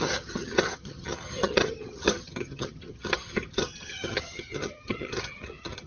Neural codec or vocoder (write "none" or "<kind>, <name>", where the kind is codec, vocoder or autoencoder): vocoder, HiFi-GAN